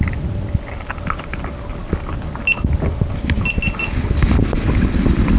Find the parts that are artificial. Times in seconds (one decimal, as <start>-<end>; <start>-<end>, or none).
none